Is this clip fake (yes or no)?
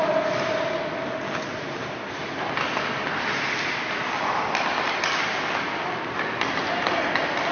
no